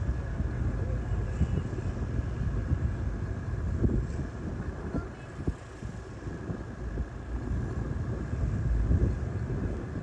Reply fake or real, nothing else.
real